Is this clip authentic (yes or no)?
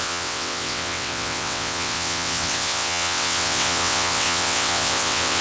no